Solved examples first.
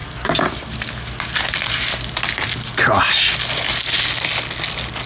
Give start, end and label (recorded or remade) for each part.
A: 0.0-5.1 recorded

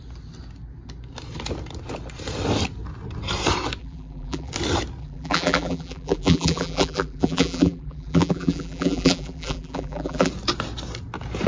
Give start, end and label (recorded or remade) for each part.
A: 0.0-3.8 recorded; 3.8-4.5 remade; 4.5-5.0 recorded; 5.0-10.3 remade; 10.3-11.5 recorded

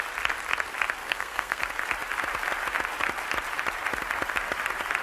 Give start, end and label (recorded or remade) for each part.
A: 0.0-1.0 recorded; 1.0-1.6 remade; 1.6-5.0 recorded

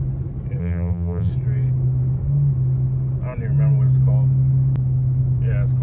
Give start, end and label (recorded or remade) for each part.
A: 0.0-0.6 recorded; 0.6-1.3 remade; 1.3-5.8 recorded

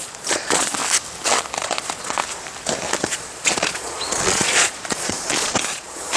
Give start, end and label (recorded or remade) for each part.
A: 0.0-0.8 remade; 0.8-1.6 recorded; 1.6-2.2 remade; 2.2-3.0 recorded; 3.0-6.2 remade